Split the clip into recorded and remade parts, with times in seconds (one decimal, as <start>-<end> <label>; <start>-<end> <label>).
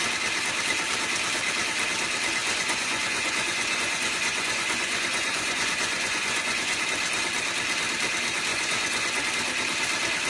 0.0-2.4 recorded; 2.4-6.8 remade; 6.8-8.5 recorded; 8.5-9.3 remade; 9.3-10.3 recorded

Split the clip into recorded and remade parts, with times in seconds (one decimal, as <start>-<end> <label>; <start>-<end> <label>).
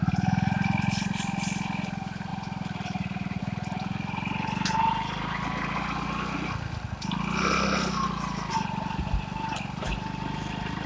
0.0-10.9 recorded